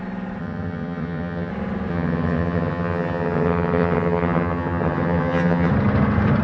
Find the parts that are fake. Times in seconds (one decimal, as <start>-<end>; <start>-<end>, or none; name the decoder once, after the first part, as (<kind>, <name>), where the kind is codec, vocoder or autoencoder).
0.4-1.5 (vocoder, HiFi-GAN); 1.9-5.7